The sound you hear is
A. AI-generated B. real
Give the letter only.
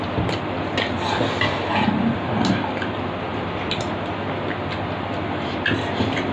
B